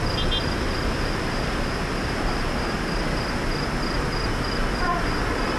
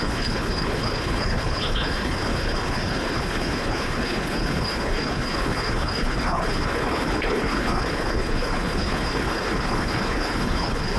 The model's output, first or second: second